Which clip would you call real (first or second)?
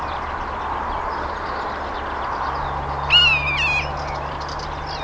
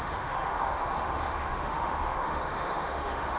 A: first